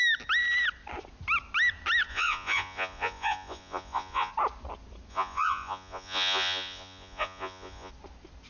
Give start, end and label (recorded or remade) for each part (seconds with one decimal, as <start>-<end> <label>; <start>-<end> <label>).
0.0-2.1 recorded; 2.1-4.3 remade; 4.3-5.1 recorded; 5.1-7.9 remade; 7.9-8.5 recorded